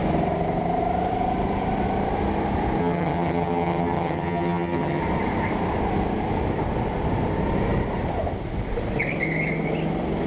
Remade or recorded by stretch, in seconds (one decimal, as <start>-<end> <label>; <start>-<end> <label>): 0.0-2.8 recorded; 2.8-5.0 remade; 5.0-10.3 recorded